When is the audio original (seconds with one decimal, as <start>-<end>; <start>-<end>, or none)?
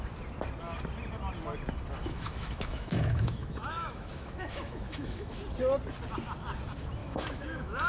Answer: 0.0-2.0; 5.4-7.0